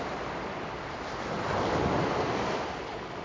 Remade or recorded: recorded